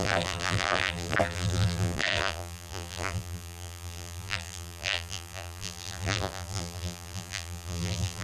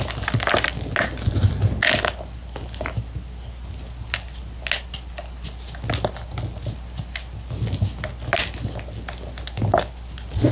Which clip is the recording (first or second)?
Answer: second